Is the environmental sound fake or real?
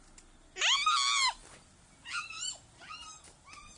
real